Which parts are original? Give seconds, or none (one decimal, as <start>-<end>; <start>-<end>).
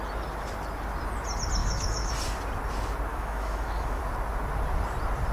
0.0-1.6; 2.1-3.1; 4.0-5.3